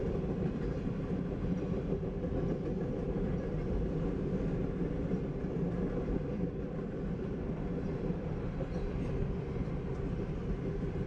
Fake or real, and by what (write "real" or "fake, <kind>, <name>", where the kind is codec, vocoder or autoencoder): fake, vocoder, BigVGAN v2